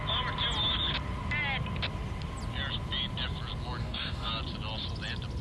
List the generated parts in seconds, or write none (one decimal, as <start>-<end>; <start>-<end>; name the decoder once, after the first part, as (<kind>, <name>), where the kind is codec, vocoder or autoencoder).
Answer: 3.8-4.3 (codec, DAC)